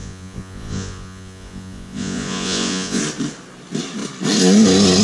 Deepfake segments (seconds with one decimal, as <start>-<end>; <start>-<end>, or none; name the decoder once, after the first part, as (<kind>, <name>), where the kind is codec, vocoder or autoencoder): 0.0-3.0 (vocoder, Vocos)